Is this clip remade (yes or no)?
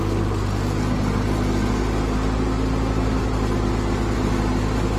no